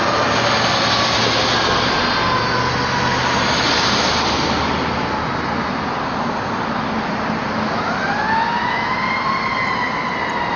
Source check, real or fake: real